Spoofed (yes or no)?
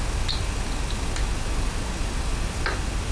no